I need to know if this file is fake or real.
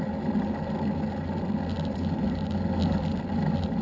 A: real